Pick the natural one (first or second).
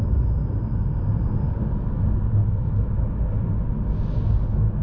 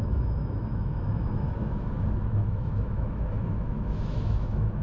first